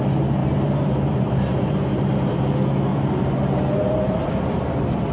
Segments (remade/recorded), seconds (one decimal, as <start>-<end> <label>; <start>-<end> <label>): 0.0-0.4 recorded; 0.4-2.5 remade; 2.5-2.9 recorded; 2.9-4.3 remade; 4.3-5.1 recorded